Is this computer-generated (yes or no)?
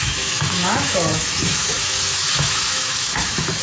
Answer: yes